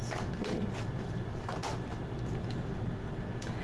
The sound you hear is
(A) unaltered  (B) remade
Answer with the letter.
A